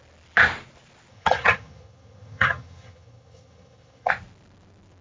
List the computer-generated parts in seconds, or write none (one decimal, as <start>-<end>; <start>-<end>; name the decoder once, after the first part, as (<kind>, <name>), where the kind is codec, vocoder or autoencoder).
1.1-4.1 (vocoder, HiFi-GAN)

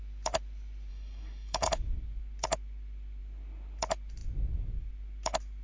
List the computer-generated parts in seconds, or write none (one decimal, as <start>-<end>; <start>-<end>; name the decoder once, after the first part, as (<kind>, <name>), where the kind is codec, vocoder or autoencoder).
0.9-1.7 (codec, DAC)

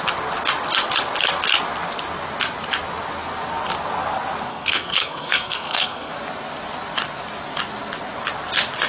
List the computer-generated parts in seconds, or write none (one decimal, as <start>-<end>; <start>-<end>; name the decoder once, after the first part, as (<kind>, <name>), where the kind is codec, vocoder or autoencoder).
4.5-6.1 (codec, SNAC)

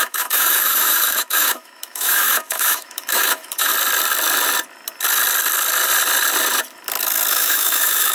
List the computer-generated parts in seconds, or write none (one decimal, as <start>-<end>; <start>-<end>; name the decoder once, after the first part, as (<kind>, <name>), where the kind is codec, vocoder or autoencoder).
0.0-3.7 (autoencoder, DAC-VAE); 7.3-8.1

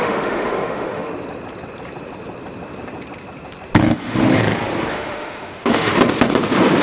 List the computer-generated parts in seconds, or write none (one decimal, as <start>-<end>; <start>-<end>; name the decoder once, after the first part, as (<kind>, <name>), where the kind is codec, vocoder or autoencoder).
0.0-1.1 (autoencoder, DAC-VAE); 3.8-4.4; 4.9-5.9